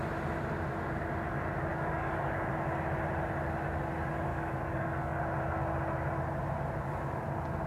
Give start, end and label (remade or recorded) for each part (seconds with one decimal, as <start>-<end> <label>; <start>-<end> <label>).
0.0-1.7 recorded; 1.7-2.5 remade; 2.5-4.3 recorded; 4.3-5.2 remade; 5.2-7.7 recorded